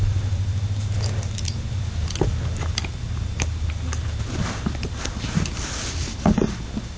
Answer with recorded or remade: recorded